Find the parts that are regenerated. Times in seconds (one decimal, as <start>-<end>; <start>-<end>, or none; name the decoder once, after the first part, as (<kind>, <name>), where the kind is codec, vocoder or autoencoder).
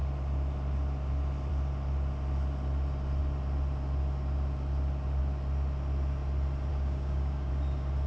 6.7-7.5 (codec, DAC)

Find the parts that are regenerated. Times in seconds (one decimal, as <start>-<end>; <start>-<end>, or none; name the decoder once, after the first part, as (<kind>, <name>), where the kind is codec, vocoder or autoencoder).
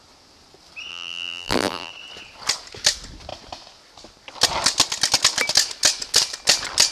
0.9-1.9 (vocoder, BigVGAN v2)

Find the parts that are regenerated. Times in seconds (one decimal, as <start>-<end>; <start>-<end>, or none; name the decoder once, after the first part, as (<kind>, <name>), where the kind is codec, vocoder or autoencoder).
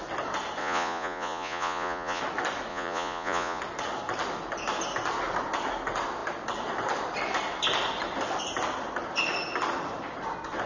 0.6-2.2 (vocoder, Vocos); 2.7-3.6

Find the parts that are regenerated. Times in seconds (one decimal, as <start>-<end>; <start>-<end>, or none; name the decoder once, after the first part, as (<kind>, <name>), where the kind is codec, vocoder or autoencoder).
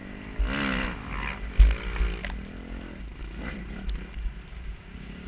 4.5-5.3 (codec, DAC)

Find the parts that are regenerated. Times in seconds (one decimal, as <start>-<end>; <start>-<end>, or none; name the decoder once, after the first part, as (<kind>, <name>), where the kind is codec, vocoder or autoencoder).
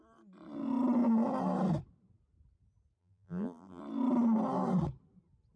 3.0-3.8 (vocoder, BigVGAN v2)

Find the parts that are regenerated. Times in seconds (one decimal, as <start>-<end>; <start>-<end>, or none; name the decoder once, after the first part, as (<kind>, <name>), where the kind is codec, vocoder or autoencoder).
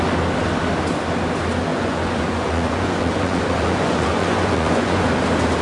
1.7-5.1 (vocoder, Vocos)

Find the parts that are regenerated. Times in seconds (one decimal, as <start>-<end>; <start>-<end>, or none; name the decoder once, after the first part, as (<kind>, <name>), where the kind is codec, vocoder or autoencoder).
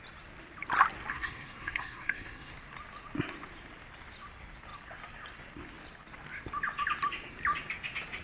1.1-2.5 (codec, SNAC)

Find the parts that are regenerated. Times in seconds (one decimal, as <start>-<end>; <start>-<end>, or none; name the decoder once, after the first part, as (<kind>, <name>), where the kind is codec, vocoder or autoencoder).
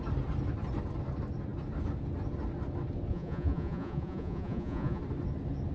3.1-5.0 (vocoder, Vocos)